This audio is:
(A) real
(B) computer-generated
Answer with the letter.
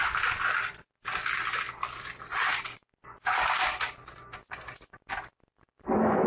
A